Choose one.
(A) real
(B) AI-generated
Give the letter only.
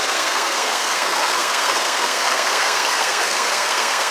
B